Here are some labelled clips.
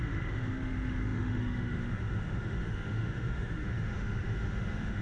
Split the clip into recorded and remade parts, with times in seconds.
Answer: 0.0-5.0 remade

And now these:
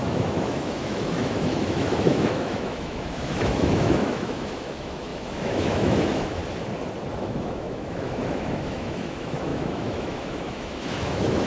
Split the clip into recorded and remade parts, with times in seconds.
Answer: 0.0-6.4 remade; 6.4-7.1 recorded; 7.1-11.5 remade

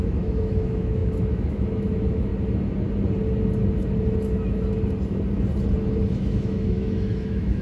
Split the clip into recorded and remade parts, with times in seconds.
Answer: 0.0-2.3 remade; 2.3-6.1 recorded; 6.1-7.6 remade

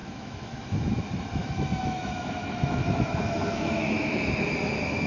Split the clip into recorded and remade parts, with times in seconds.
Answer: 0.0-0.9 remade; 0.9-1.4 recorded; 1.4-4.1 remade; 4.1-5.1 recorded

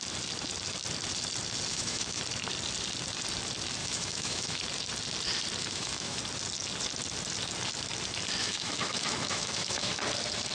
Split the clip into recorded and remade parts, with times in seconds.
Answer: 0.0-1.7 recorded; 1.7-2.2 remade; 2.2-3.8 recorded; 3.8-4.6 remade; 4.6-5.6 recorded; 5.6-6.2 remade; 6.2-8.4 recorded; 8.4-10.0 remade; 10.0-10.5 recorded

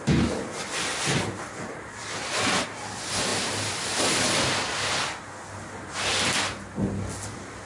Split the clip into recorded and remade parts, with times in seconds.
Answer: 0.0-7.7 recorded